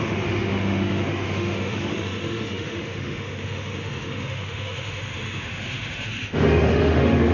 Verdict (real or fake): fake